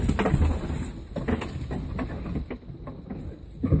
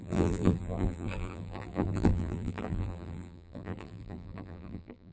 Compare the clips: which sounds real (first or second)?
first